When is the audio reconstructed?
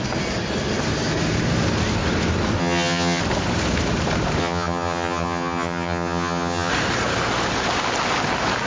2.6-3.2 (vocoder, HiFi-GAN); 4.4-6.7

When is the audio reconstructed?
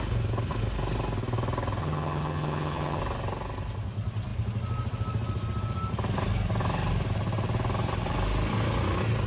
1.8-3.0 (vocoder, HiFi-GAN)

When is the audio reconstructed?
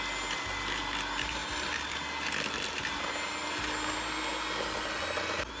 none